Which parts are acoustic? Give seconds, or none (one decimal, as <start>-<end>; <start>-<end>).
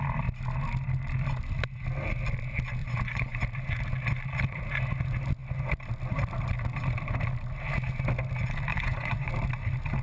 0.0-2.8; 3.4-8.7; 9.3-10.0